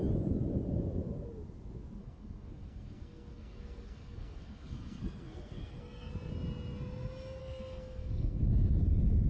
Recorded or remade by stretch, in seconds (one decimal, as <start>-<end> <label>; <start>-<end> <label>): 0.0-2.0 recorded; 2.0-6.1 remade; 6.1-7.4 recorded; 7.4-8.4 remade; 8.4-9.3 recorded